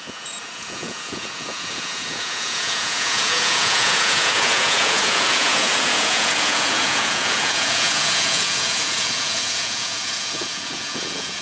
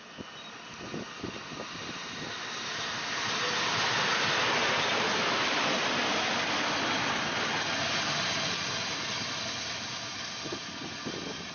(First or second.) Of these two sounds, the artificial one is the first